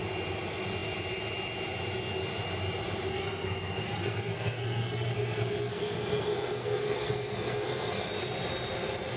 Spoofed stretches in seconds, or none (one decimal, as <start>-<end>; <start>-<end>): 3.1-8.1